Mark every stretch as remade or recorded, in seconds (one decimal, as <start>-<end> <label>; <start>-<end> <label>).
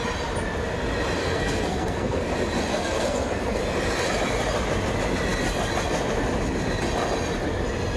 0.0-1.2 recorded; 1.2-2.3 remade; 2.3-2.7 recorded; 2.7-3.6 remade; 3.6-8.0 recorded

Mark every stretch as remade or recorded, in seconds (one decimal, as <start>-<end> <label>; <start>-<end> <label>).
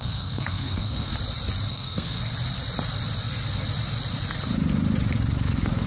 0.0-1.1 remade; 1.1-1.7 recorded; 1.7-2.2 remade; 2.2-5.9 recorded